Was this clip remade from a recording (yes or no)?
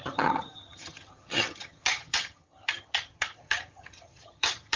yes